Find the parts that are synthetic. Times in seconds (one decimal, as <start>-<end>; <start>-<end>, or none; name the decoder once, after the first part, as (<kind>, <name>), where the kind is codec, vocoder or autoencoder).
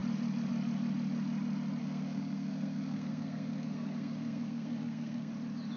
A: 1.8-5.3 (codec, SNAC)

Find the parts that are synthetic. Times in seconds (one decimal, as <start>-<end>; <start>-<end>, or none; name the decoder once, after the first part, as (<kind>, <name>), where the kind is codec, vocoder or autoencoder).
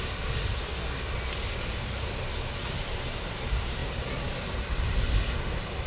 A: none